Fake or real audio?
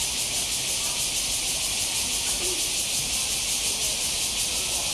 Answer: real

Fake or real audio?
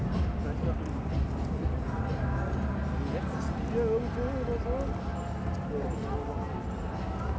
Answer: real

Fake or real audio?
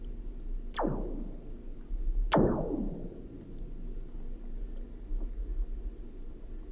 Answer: real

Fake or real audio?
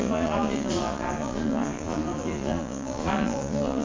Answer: fake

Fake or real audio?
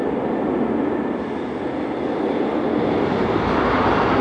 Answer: real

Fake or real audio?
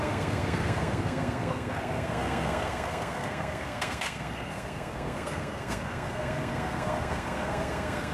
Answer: fake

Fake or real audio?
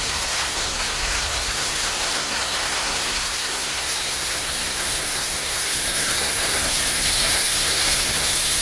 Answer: fake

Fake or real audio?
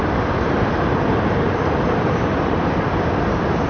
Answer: real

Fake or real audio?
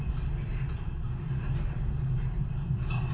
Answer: real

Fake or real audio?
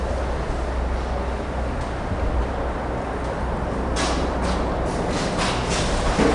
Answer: real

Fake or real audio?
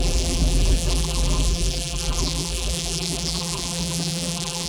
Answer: fake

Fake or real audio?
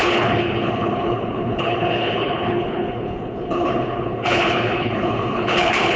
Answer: fake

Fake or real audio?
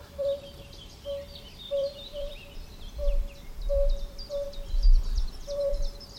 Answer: fake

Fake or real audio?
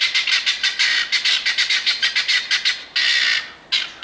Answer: real